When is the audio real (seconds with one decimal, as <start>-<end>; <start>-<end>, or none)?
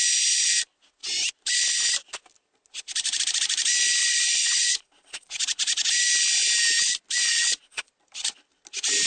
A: 0.0-4.0; 5.9-7.2; 7.9-9.1